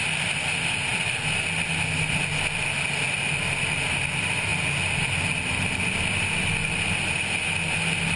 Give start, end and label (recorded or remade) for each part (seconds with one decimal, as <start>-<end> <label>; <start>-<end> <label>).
0.0-8.2 recorded